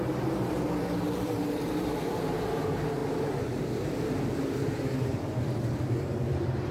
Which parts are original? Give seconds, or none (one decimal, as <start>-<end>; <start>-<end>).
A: none